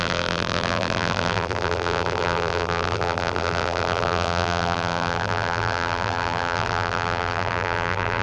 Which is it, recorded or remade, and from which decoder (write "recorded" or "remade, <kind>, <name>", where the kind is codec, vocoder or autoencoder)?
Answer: remade, vocoder, BigVGAN v2